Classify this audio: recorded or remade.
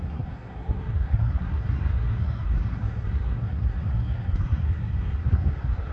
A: remade